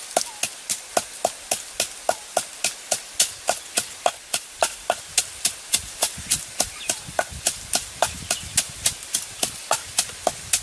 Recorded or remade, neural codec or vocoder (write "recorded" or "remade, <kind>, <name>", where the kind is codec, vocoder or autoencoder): recorded